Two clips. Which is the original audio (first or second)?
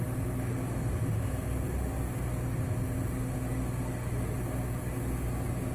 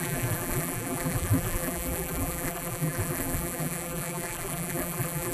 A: first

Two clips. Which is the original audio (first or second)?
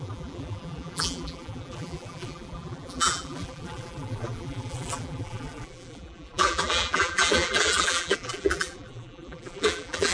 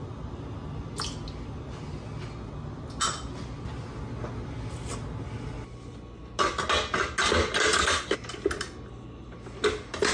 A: second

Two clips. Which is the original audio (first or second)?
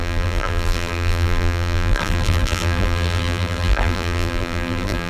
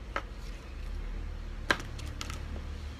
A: second